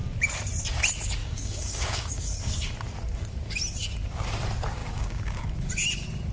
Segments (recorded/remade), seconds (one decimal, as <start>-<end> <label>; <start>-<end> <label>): 0.0-1.2 recorded; 1.2-2.5 remade; 2.5-4.8 recorded; 4.8-5.5 remade; 5.5-6.3 recorded